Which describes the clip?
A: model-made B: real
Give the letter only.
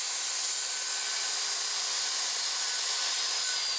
B